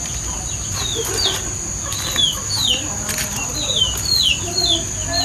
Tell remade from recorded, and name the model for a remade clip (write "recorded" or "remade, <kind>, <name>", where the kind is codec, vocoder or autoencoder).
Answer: recorded